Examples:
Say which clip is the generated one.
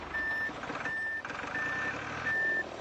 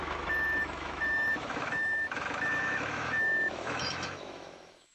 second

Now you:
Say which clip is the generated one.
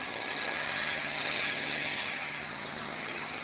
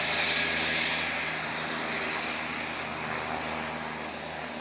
first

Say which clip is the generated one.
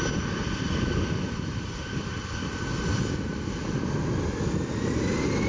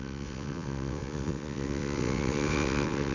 second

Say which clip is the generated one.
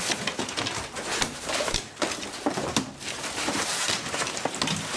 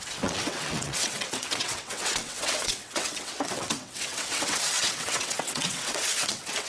second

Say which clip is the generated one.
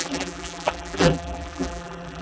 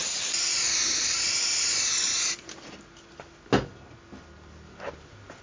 first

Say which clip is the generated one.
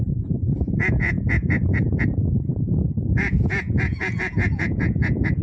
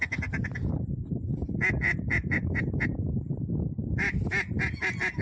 first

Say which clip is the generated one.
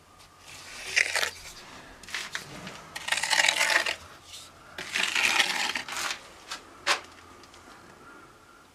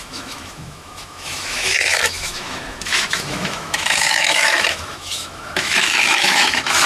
second